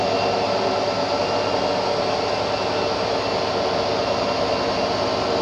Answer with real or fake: real